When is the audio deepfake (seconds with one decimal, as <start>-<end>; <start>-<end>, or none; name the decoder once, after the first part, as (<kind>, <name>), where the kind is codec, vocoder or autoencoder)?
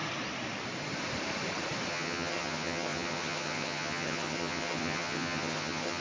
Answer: 1.9-6.0 (vocoder, HiFi-GAN)